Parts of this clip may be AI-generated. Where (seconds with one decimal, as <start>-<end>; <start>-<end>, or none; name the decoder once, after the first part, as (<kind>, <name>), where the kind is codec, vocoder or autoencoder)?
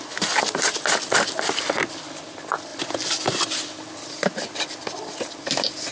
none